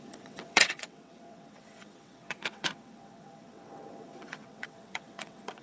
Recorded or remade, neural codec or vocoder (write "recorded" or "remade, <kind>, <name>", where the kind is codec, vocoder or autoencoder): remade, vocoder, WaveNeXt